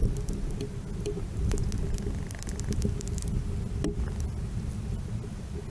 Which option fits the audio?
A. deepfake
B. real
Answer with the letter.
B